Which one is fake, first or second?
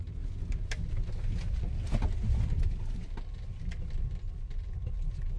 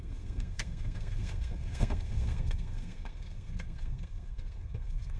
second